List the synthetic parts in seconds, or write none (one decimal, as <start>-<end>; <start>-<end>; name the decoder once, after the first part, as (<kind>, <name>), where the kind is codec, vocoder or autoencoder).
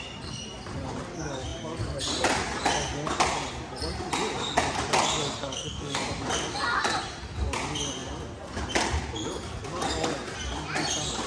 5.4-6.0 (codec, SNAC)